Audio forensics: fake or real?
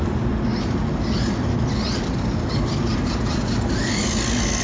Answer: real